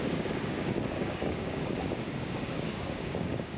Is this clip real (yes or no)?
no